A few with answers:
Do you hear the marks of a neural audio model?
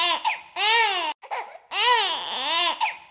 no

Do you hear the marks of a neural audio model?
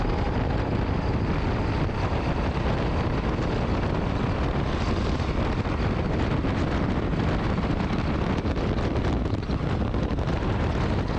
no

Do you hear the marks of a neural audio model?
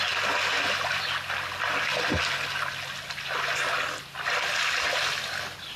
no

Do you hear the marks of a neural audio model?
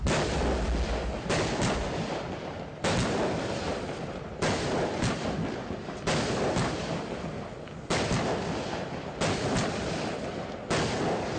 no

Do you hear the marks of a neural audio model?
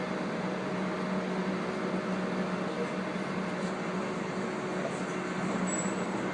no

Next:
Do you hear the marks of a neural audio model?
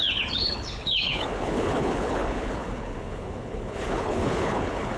yes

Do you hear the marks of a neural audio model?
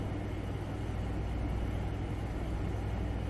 no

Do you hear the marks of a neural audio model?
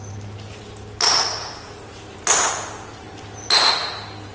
no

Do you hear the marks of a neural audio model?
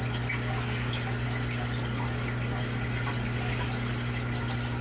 no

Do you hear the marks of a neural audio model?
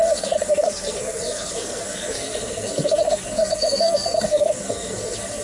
yes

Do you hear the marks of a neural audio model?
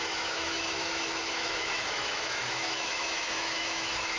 yes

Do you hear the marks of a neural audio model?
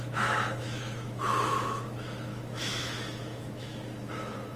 yes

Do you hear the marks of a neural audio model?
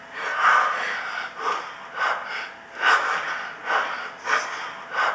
no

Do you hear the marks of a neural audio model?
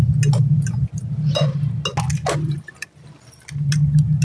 no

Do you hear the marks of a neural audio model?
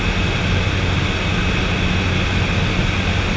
no